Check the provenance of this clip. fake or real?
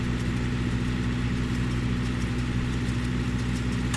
real